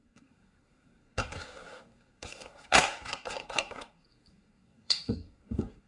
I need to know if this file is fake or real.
fake